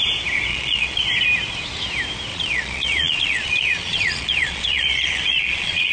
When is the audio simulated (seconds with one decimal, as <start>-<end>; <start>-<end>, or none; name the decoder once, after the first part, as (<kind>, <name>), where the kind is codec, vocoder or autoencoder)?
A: 0.5-1.0 (vocoder, Vocos); 2.3-5.9